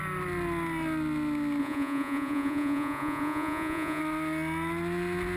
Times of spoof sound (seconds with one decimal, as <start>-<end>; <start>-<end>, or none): 1.6-4.0

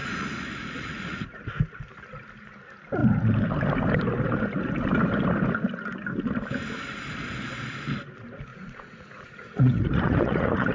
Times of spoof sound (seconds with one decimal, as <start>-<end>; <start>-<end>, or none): 0.0-1.5; 8.5-10.7